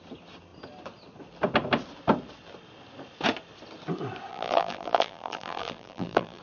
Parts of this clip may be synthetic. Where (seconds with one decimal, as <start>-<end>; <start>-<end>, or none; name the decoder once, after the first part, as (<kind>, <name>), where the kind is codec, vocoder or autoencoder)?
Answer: 4.3-6.4 (vocoder, BigVGAN v2)